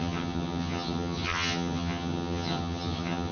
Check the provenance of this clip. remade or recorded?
remade